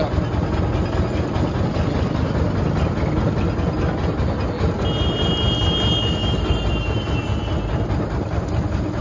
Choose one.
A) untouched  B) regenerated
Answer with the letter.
A